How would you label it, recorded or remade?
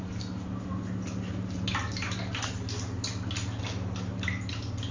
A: recorded